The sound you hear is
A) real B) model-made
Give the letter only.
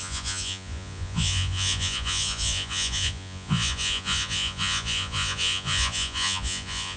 B